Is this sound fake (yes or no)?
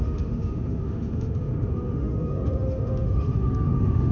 yes